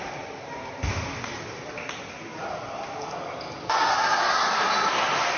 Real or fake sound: real